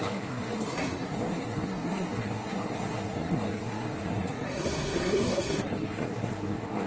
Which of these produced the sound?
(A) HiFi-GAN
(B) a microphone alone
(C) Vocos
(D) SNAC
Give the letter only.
D